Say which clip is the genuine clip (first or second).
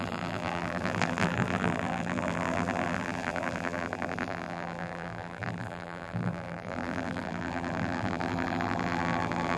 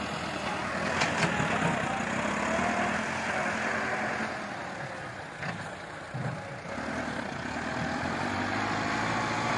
second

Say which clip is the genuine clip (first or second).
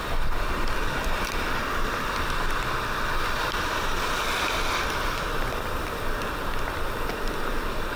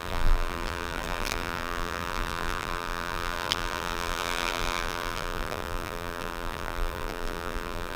first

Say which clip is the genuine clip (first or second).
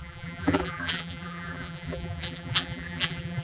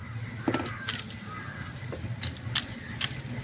second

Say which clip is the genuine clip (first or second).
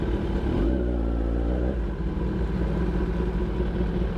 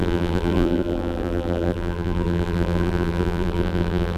first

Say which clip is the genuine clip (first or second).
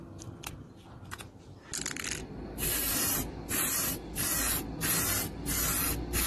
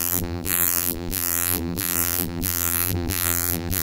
first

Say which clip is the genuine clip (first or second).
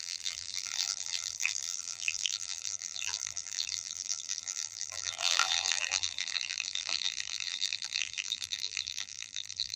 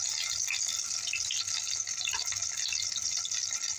second